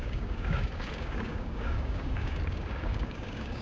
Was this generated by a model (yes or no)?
yes